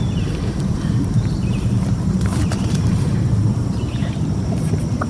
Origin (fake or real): fake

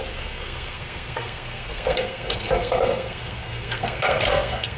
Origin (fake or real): fake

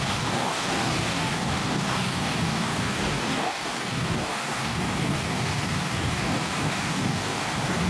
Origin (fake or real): fake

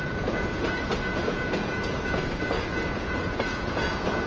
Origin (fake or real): fake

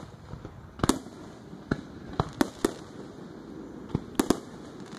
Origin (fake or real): real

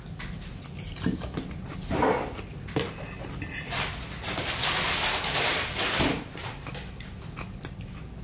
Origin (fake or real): real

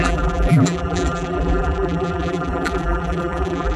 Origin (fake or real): fake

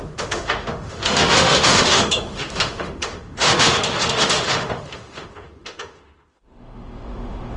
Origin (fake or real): fake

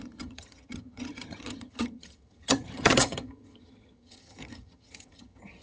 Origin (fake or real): fake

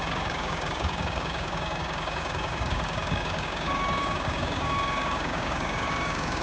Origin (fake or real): fake